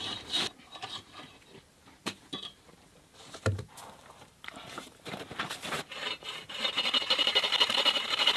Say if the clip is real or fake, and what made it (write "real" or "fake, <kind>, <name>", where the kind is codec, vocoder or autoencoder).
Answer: fake, vocoder, BigVGAN v2